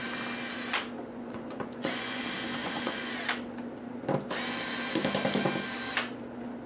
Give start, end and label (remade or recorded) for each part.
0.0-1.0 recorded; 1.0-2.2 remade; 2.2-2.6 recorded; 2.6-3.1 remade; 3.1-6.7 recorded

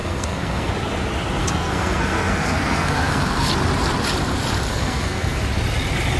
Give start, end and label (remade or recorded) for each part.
0.0-0.7 remade; 0.7-1.4 recorded; 1.4-3.5 remade; 3.5-4.7 recorded; 4.7-5.4 remade; 5.4-6.2 recorded

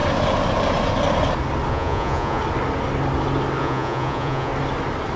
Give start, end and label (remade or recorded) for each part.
0.0-1.7 recorded; 1.7-2.4 remade; 2.4-3.6 recorded; 3.6-4.5 remade; 4.5-5.2 recorded

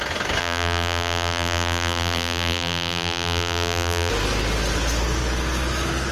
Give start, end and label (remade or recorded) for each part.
0.0-0.4 recorded; 0.4-4.1 remade; 4.1-6.1 recorded

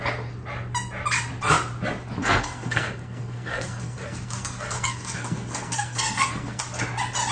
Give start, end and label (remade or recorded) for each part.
0.0-2.2 recorded; 2.2-6.6 remade; 6.6-7.3 recorded

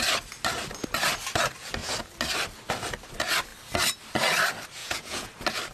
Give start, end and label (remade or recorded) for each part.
0.0-4.8 recorded; 4.8-5.3 remade; 5.3-5.7 recorded

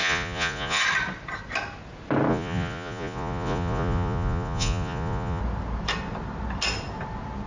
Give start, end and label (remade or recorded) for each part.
0.0-0.8 remade; 0.8-2.3 recorded; 2.3-5.4 remade; 5.4-7.5 recorded

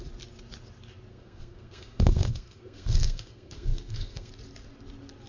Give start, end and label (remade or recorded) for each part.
0.0-1.1 recorded; 1.1-4.3 remade; 4.3-5.3 recorded